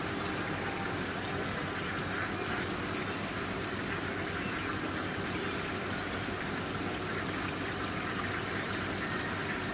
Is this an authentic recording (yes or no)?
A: yes